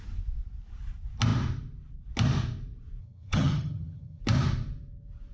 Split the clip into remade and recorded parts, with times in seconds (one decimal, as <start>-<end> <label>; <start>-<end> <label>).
0.0-3.0 recorded; 3.0-4.2 remade; 4.2-5.3 recorded